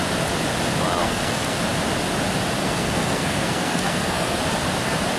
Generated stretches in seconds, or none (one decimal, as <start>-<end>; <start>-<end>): 1.0-1.6; 2.6-4.4